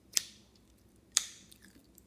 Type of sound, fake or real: fake